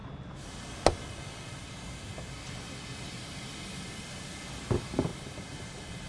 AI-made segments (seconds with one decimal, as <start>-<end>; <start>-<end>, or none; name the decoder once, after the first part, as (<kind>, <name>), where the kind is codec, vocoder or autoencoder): none